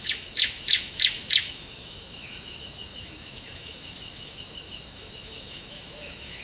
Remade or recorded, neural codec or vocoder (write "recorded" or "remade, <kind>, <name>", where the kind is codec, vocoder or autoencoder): remade, autoencoder, DAC-VAE